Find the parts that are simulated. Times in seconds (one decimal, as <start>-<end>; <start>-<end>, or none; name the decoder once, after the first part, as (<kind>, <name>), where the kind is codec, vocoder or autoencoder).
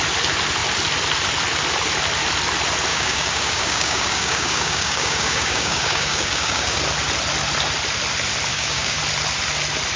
2.9-6.8 (codec, DAC); 8.5-9.0